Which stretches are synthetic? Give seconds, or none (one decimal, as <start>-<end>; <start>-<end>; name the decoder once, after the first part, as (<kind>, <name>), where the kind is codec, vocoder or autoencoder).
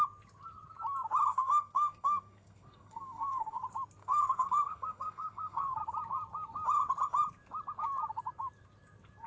1.3-3.6 (codec, SNAC); 4.0-5.8